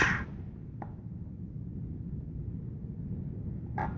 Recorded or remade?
recorded